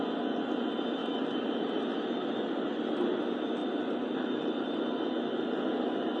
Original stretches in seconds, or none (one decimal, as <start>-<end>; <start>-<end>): 0.0-1.0; 3.2-3.6; 4.8-6.2